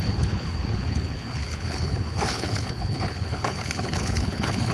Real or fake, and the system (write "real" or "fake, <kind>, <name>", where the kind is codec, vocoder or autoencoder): fake, codec, HILCodec